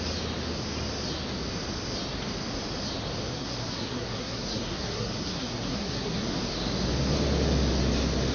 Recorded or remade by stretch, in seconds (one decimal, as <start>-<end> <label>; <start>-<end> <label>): 0.0-3.3 recorded; 3.3-6.4 remade; 6.4-8.3 recorded